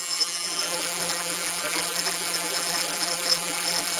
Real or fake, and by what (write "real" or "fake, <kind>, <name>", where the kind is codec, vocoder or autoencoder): fake, vocoder, BigVGAN v2